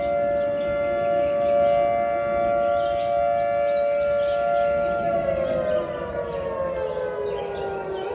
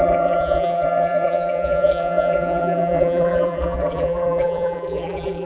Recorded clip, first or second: first